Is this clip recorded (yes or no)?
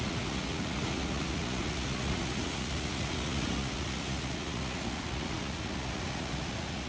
no